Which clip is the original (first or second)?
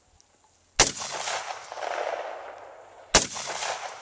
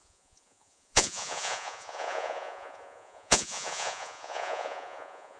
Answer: first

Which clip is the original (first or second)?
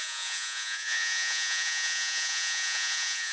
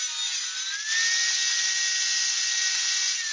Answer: second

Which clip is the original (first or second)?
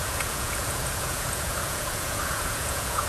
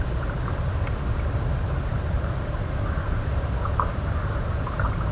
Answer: second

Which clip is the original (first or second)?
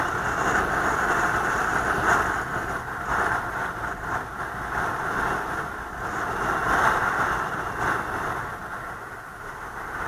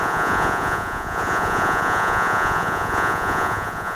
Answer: first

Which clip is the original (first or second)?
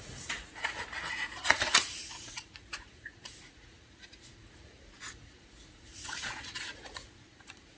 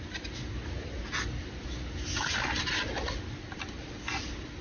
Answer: second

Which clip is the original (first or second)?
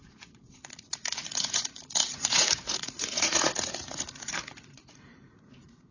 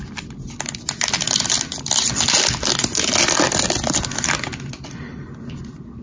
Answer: second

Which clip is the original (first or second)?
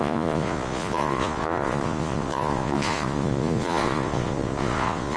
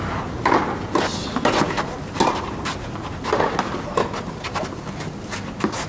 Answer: second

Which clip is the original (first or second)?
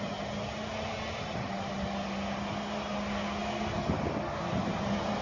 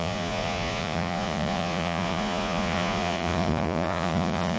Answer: first